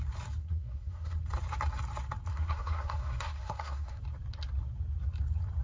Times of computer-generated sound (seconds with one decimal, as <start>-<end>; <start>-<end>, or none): 0.4-1.2; 2.3-4.0